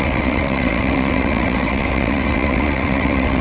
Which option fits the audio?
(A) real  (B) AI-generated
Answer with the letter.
B